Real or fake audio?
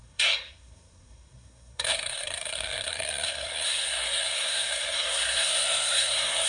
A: fake